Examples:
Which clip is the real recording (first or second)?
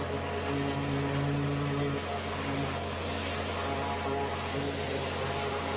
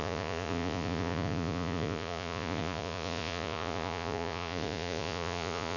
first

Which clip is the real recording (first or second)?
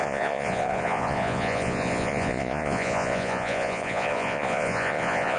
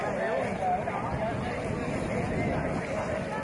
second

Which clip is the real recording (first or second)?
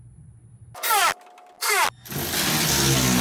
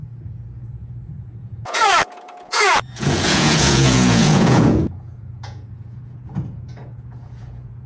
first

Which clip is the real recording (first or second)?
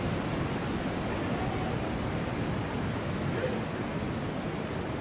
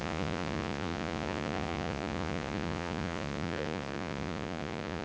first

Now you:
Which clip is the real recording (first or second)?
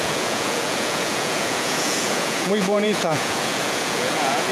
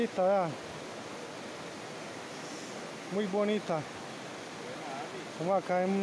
second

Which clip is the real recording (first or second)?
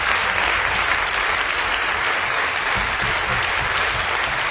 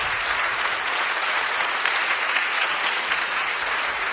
first